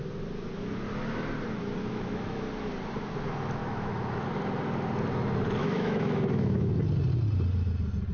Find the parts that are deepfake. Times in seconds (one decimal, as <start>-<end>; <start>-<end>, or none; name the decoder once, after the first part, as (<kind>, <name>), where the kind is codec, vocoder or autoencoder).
1.8-2.4 (autoencoder, DAC-VAE); 3.6-4.2; 5.6-6.7